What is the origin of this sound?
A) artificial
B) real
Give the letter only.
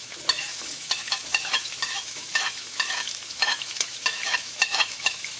A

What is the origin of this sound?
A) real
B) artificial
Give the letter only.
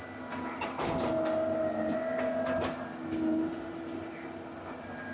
A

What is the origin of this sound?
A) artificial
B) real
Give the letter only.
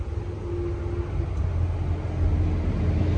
B